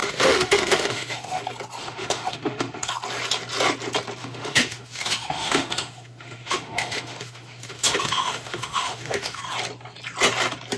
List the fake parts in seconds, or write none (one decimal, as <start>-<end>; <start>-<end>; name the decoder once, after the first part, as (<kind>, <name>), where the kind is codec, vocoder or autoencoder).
0.0-1.4 (autoencoder, DAC-VAE); 1.8-2.9; 4.2-9.4